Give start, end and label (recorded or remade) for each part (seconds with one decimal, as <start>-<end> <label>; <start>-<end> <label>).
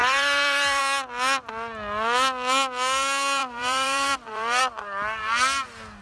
0.0-0.8 remade; 0.8-3.4 recorded; 3.4-4.6 remade; 4.6-6.0 recorded